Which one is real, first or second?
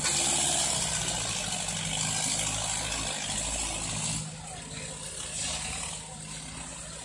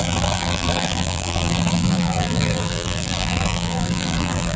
first